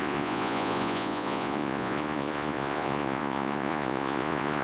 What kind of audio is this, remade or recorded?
remade